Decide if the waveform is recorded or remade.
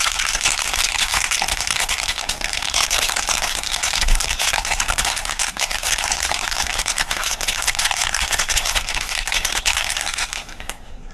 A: remade